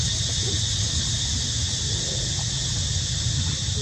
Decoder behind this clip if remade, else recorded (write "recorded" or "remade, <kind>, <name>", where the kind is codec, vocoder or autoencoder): recorded